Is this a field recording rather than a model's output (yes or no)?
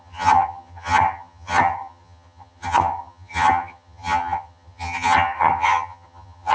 no